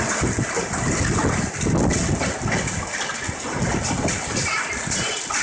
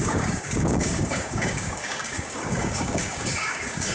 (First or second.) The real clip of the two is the first